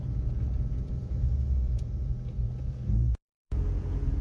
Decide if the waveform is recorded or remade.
remade